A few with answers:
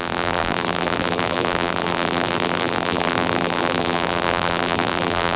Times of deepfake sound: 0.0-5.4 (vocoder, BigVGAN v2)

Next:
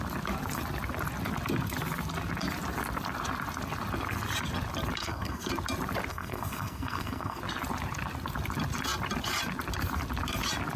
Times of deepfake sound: 5.0-5.5 (codec, SNAC); 6.1-7.4

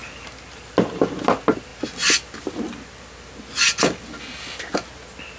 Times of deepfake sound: none

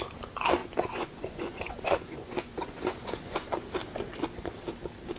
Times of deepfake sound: 0.6-3.7 (vocoder, Vocos)

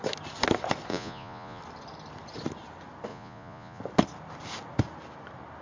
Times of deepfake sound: 0.9-1.6 (vocoder, Vocos); 3.1-3.8

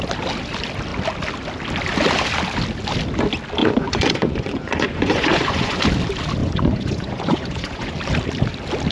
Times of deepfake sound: 3.6-5.8 (vocoder, Vocos); 6.4-7.9

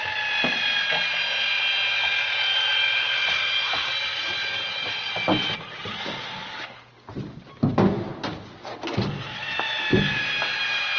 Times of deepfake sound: none